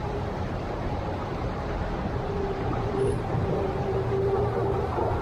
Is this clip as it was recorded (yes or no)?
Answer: no